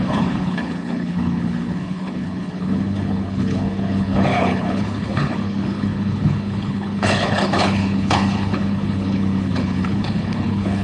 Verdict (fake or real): fake